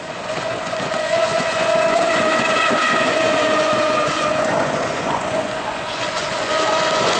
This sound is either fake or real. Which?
fake